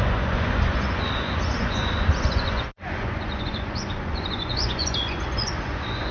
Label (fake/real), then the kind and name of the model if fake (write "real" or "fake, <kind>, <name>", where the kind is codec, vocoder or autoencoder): fake, vocoder, Vocos